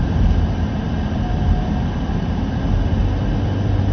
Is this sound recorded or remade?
recorded